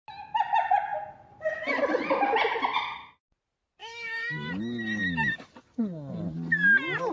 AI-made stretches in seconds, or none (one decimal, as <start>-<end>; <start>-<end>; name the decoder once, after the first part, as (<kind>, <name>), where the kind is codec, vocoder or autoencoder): 3.8-4.5 (autoencoder, DAC-VAE)